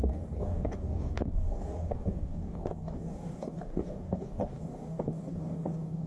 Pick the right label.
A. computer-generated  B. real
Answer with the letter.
A